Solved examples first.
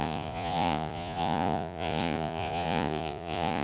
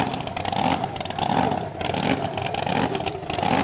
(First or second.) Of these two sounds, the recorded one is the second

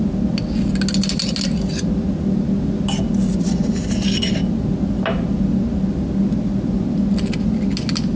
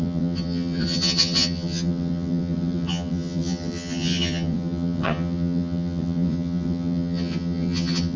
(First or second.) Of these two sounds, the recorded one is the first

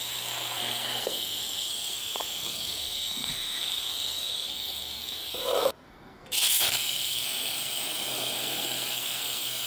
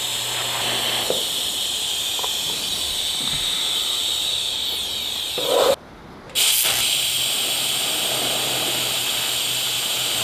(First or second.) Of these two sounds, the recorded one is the second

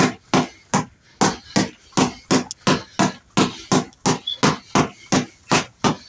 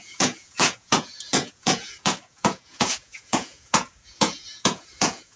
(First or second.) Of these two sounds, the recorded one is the first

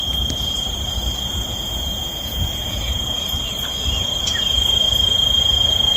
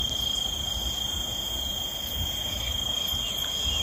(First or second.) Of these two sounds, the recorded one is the second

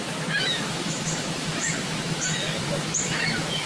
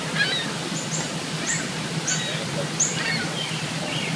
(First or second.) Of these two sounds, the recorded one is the second